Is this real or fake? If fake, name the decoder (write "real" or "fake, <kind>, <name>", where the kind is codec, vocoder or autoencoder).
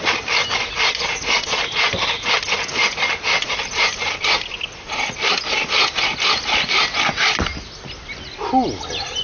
real